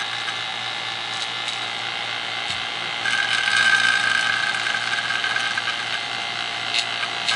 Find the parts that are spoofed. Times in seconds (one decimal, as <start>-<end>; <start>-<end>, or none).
3.5-4.0